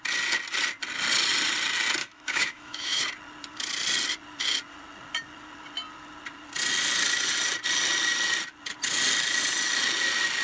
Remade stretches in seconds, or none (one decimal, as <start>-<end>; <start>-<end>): 2.0-3.0